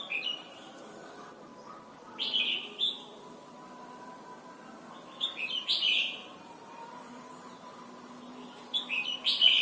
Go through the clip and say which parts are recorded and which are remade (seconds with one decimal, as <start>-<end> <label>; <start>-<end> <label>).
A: 0.0-1.5 remade; 1.5-5.4 recorded; 5.4-9.6 remade

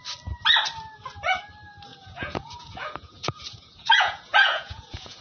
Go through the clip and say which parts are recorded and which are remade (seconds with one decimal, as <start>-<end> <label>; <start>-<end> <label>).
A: 0.0-1.9 recorded; 1.9-5.2 remade